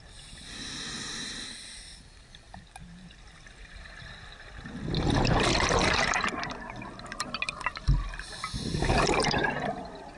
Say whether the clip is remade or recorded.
recorded